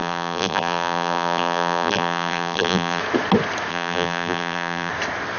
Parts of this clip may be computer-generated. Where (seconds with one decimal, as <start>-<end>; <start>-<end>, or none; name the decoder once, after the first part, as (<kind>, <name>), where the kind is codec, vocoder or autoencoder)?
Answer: 0.0-3.0 (vocoder, BigVGAN v2); 3.7-4.9